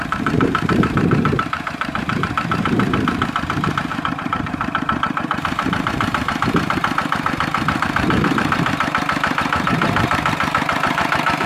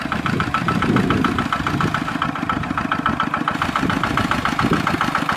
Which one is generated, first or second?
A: first